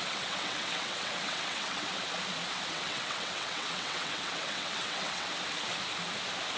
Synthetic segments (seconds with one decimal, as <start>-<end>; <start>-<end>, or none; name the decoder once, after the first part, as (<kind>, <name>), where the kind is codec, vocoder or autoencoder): 0.0-1.9 (vocoder, WaveNeXt); 2.7-5.3